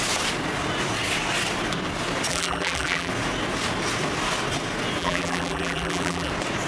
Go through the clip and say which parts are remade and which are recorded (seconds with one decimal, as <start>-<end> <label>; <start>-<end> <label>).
0.0-2.3 recorded; 2.3-3.1 remade; 3.1-5.0 recorded; 5.0-6.3 remade; 6.3-6.7 recorded